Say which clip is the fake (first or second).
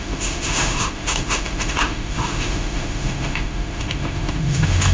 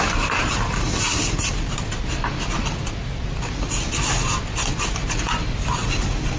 first